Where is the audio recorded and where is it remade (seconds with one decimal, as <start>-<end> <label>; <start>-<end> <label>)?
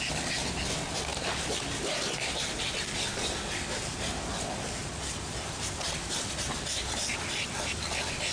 0.0-8.3 recorded